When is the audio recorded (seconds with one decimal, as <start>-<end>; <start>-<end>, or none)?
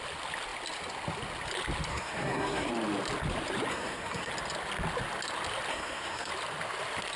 0.0-1.9; 2.7-3.7; 4.3-5.7; 6.3-7.2